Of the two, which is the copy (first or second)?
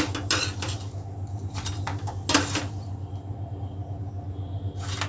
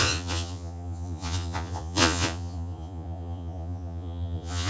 second